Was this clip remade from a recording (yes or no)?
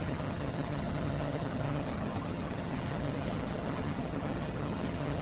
yes